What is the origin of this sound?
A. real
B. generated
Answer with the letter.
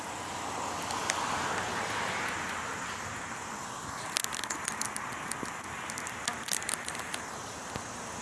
A